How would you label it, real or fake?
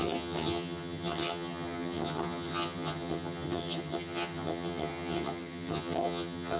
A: fake